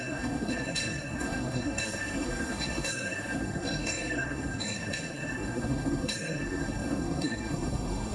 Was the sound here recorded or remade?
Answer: remade